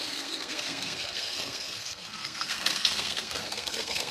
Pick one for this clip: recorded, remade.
remade